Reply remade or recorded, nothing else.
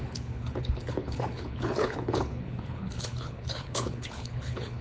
remade